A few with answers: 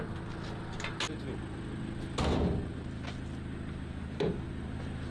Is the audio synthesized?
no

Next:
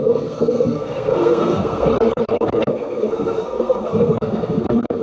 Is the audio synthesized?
yes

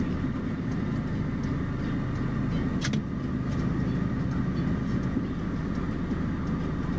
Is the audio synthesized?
no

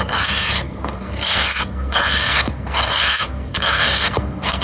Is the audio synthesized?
yes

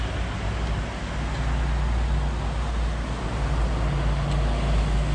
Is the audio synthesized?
no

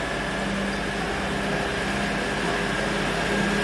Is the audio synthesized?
no